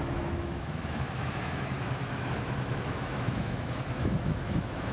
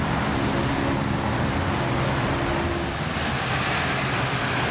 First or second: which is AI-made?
first